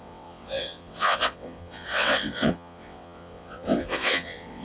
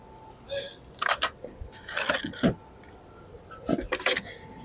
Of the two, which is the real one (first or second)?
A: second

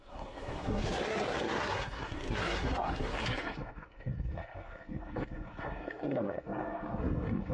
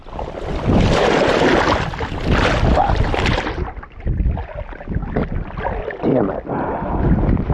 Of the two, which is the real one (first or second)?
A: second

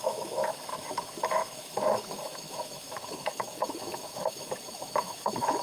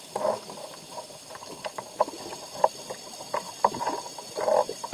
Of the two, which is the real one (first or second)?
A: second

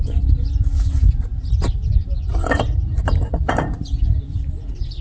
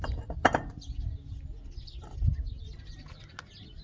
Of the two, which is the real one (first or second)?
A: second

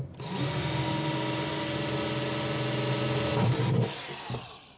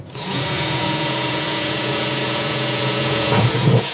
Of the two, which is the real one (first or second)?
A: first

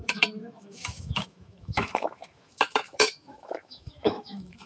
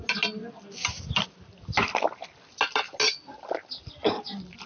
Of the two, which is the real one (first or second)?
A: second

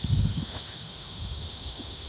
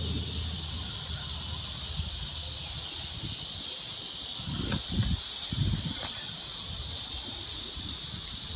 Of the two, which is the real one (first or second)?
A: second